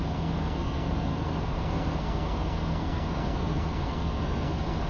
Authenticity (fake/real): fake